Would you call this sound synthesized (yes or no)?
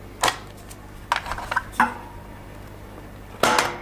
no